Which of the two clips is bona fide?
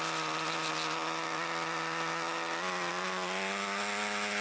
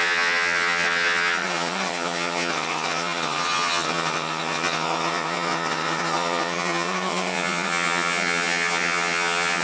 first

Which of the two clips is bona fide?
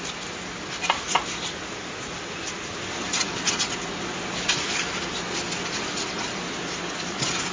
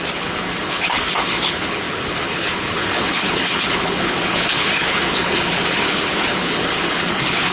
first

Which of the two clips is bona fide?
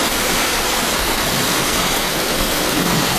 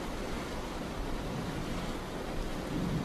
second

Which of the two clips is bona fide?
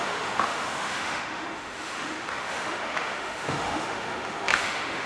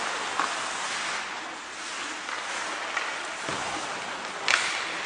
second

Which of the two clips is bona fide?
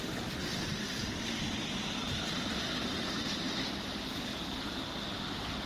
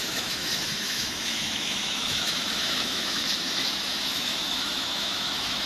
first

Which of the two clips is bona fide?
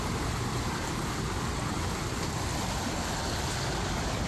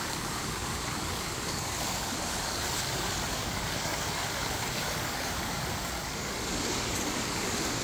first